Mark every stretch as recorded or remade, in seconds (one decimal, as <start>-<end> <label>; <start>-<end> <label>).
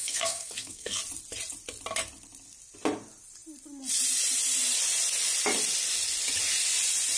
0.0-1.0 remade; 1.0-7.2 recorded